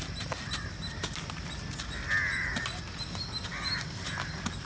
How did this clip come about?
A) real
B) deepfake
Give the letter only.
A